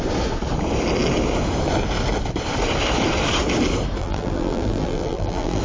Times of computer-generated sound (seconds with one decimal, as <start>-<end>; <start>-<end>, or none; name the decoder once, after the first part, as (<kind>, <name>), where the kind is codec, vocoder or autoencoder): 4.0-5.6 (vocoder, BigVGAN v2)